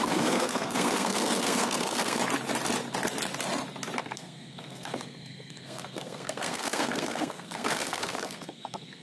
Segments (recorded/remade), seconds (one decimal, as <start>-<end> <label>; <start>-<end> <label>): 0.0-2.2 remade; 2.2-4.0 recorded; 4.0-9.0 remade

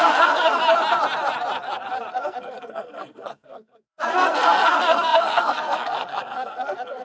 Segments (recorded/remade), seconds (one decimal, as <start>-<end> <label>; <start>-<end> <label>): 0.0-0.6 remade; 0.6-2.1 recorded; 2.1-7.0 remade

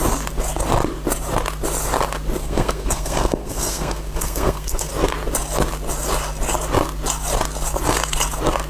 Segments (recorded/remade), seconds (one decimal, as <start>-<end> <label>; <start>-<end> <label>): 0.0-2.4 recorded; 2.4-4.9 remade; 4.9-8.7 recorded